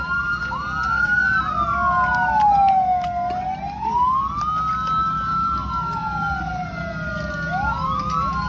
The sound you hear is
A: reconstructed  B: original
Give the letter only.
B